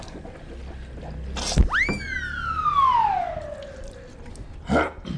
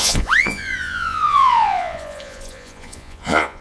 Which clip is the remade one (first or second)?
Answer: second